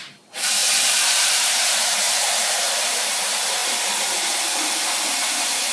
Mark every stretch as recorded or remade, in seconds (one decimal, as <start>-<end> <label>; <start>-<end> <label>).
0.0-3.6 remade; 3.6-5.2 recorded; 5.2-5.7 remade